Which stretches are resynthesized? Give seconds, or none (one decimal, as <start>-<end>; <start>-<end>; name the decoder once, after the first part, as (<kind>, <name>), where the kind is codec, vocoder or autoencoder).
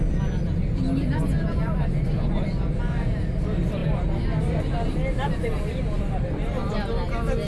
none